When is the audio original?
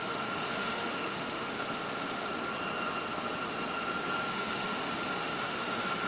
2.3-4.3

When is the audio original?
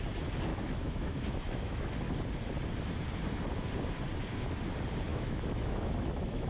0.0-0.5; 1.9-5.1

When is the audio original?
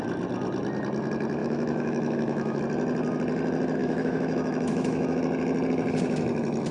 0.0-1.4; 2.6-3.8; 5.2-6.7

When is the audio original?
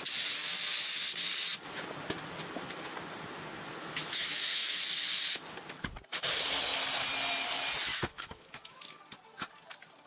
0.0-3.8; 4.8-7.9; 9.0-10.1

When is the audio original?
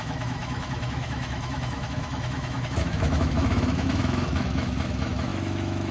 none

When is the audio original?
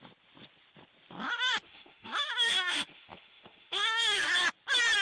0.0-1.3; 4.3-5.0